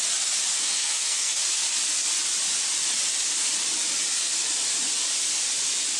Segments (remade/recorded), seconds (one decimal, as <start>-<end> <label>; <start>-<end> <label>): 0.0-0.5 recorded; 0.5-1.4 remade; 1.4-6.0 recorded